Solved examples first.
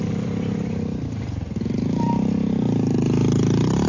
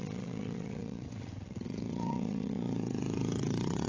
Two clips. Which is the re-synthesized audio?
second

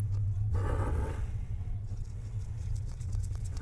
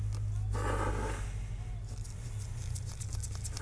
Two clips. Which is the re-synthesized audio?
first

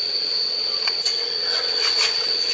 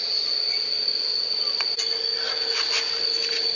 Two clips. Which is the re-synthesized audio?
first